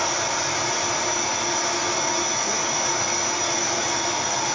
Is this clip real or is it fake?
real